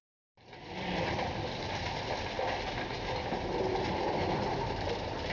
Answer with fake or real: fake